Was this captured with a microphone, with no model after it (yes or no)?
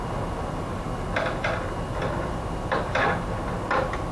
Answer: yes